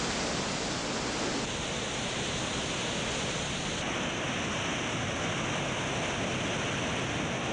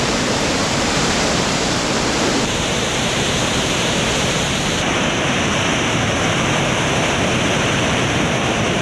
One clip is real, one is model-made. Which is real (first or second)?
first